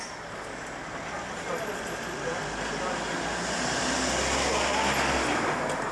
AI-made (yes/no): no